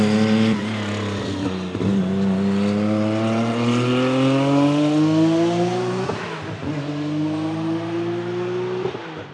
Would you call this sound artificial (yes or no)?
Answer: no